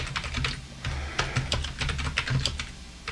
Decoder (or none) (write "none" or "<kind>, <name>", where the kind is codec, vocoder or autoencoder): none